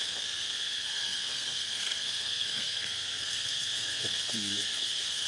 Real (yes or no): no